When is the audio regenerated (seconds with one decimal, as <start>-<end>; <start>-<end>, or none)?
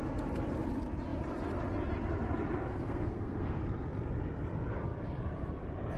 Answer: 2.6-3.6